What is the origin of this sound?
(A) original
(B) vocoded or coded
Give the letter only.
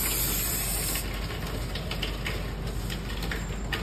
A